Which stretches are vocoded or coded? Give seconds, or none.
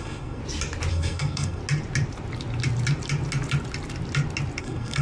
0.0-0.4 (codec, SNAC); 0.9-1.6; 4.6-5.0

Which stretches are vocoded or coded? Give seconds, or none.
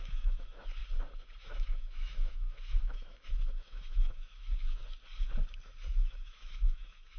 0.0-0.8 (autoencoder, DAC-VAE); 1.4-4.8; 5.9-7.2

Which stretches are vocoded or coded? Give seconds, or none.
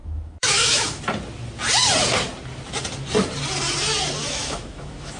0.0-1.0 (autoencoder, DAC-VAE); 4.2-5.2